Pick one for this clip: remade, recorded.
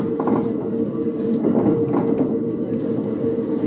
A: remade